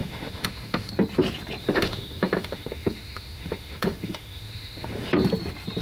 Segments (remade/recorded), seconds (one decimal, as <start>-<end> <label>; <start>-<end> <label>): 0.0-0.9 remade; 0.9-1.6 recorded; 1.6-5.1 remade; 5.1-5.8 recorded